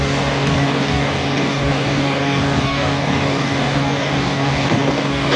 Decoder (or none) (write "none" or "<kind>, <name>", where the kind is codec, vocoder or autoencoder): codec, DAC